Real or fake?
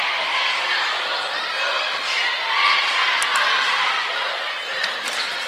real